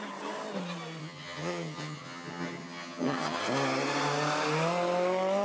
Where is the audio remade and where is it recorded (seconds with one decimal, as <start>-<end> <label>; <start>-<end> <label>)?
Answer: 0.0-1.0 recorded; 1.0-3.4 remade; 3.4-5.4 recorded